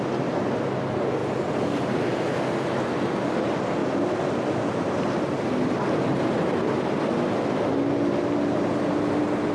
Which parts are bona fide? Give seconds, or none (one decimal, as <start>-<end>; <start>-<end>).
0.0-9.5